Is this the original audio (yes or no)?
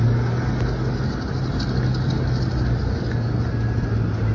yes